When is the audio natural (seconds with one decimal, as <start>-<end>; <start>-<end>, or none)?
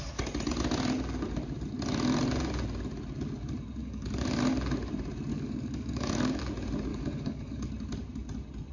0.0-3.8; 4.4-5.3; 6.4-6.9; 7.7-8.7